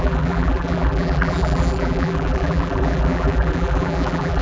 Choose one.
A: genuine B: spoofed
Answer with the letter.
B